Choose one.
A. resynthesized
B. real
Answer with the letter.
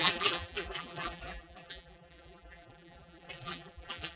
A